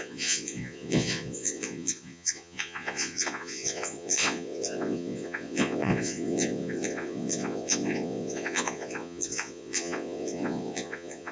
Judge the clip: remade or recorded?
remade